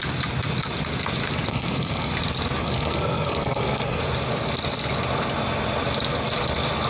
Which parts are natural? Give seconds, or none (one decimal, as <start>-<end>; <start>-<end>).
0.0-1.5; 2.1-2.6; 4.0-6.9